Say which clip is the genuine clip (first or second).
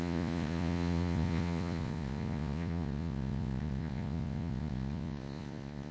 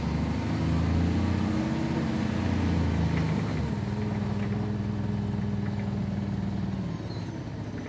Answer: second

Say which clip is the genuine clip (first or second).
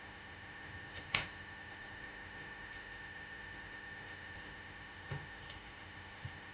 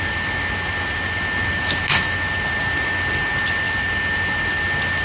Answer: second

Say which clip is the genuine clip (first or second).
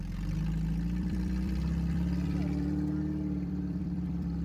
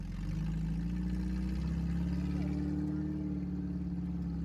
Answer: second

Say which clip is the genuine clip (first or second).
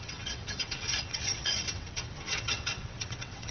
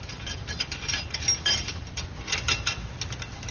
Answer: second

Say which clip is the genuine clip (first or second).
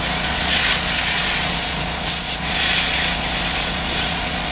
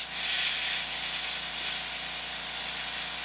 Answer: second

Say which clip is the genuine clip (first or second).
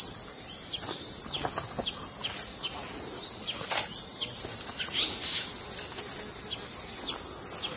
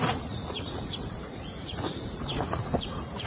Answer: first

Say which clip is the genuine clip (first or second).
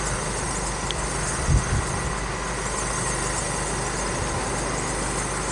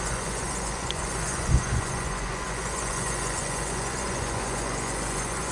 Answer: first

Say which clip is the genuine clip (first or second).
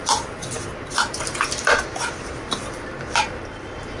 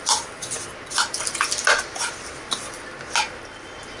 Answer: second